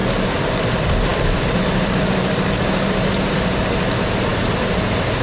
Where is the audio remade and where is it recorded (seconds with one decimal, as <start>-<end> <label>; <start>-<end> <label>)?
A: 0.0-5.2 recorded